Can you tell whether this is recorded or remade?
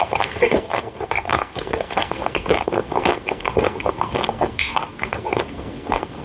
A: remade